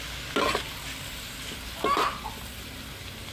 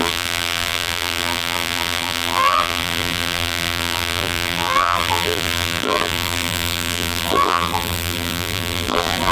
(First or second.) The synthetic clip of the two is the second